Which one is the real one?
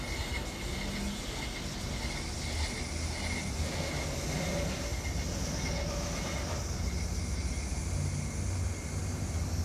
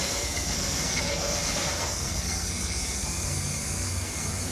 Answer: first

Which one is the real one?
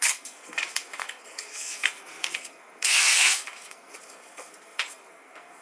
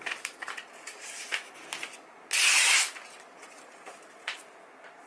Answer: second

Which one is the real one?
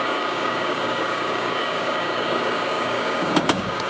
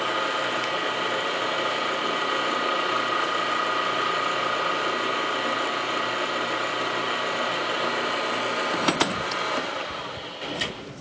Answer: second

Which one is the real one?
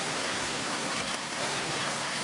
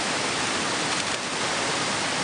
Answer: second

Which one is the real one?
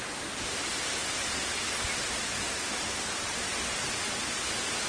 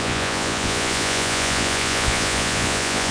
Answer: first